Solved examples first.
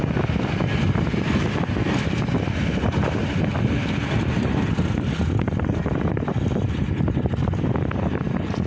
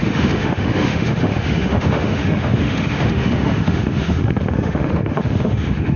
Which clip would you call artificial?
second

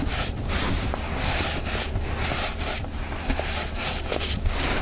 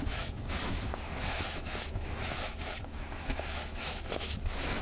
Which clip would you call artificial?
second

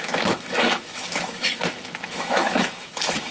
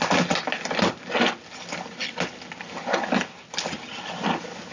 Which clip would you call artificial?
first